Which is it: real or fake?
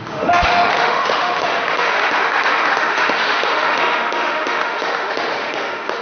fake